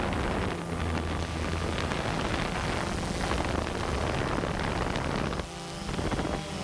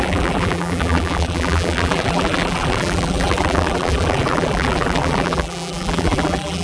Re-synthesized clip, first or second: second